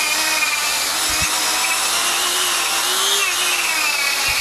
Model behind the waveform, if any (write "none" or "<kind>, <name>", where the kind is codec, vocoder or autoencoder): none